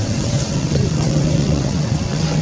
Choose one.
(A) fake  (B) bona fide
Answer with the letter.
A